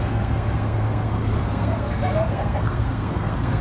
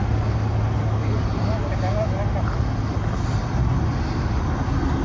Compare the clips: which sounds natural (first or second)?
second